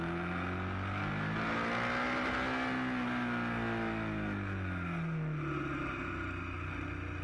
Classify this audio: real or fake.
real